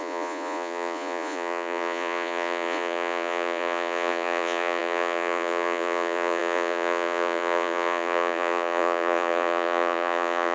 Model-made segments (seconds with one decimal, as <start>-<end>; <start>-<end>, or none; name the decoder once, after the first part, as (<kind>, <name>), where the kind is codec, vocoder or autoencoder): 0.0-10.5 (vocoder, Vocos)

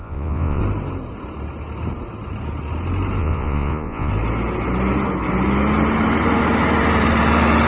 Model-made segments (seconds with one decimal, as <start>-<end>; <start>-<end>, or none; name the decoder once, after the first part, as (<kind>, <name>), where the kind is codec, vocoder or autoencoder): 0.0-0.6 (vocoder, Vocos); 3.2-4.1

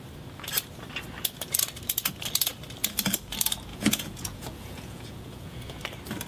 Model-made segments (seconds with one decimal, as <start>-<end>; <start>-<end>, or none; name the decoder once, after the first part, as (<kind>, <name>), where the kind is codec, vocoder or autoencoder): 3.7-5.8 (vocoder, Vocos)

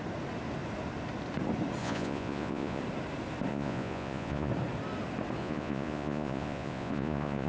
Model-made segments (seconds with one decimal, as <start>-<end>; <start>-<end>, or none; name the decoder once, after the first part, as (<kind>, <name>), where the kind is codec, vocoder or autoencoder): 1.8-2.8 (vocoder, Vocos); 3.5-4.5; 5.4-7.5